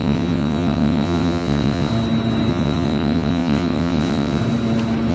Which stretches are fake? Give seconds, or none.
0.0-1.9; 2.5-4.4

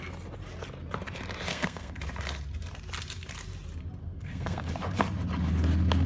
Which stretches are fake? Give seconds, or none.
1.5-2.0; 4.0-4.7

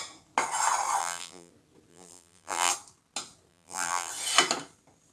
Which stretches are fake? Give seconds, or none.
1.0-1.5; 1.9-2.7; 3.5-4.1

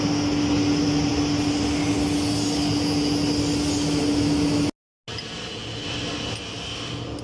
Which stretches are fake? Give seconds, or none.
none

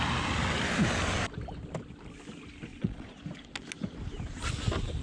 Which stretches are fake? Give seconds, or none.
2.7-3.2

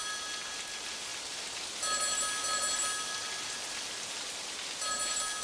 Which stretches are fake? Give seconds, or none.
none